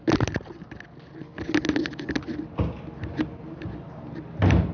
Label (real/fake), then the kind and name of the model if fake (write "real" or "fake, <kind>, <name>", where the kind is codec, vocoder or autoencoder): real